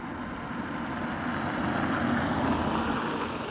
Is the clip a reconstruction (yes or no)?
no